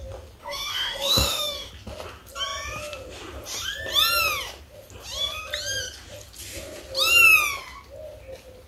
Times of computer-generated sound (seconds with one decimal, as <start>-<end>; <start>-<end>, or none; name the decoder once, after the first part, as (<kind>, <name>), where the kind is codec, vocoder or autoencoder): 0.4-1.7 (autoencoder, DAC-VAE)